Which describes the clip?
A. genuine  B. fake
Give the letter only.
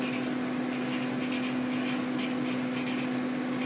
A